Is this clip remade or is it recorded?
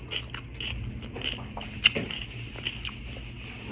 recorded